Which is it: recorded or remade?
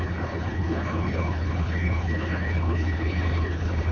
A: remade